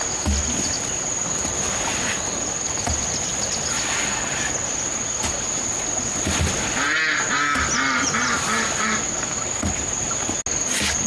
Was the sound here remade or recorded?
recorded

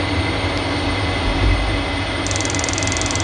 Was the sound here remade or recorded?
recorded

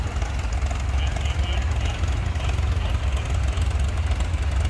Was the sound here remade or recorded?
recorded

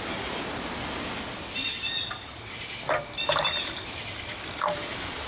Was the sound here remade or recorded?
recorded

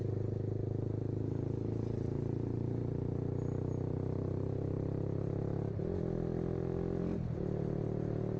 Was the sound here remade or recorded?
recorded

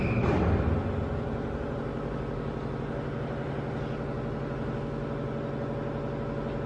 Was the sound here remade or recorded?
recorded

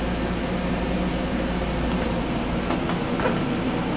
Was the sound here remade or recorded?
recorded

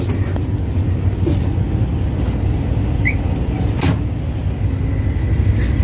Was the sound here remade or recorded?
recorded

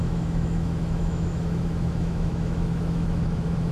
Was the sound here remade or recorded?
remade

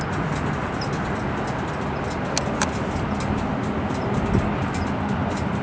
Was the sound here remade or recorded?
recorded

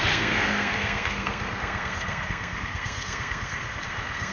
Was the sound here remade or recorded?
remade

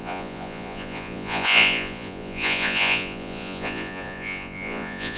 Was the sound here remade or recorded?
remade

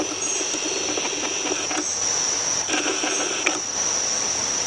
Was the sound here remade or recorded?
recorded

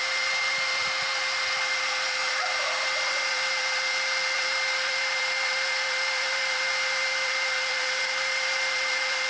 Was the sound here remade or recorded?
remade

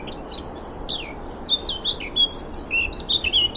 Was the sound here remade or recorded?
recorded